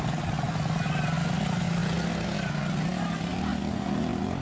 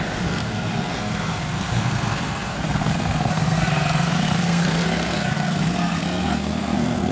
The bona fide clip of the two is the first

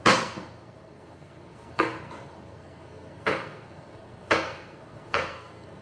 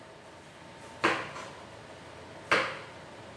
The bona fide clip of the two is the second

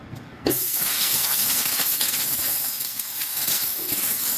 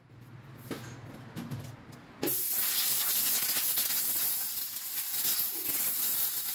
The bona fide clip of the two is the second